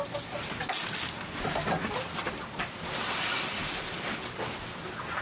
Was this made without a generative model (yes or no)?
yes